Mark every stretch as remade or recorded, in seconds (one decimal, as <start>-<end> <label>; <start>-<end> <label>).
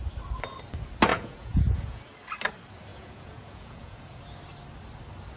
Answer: 0.0-1.1 recorded; 1.1-2.0 remade; 2.0-2.9 recorded; 2.9-4.2 remade; 4.2-5.4 recorded